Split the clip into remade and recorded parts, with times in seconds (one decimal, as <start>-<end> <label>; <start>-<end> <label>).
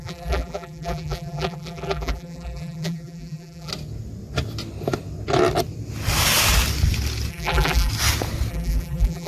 0.0-3.7 remade; 3.7-7.3 recorded; 7.3-7.9 remade; 7.9-8.5 recorded; 8.5-9.3 remade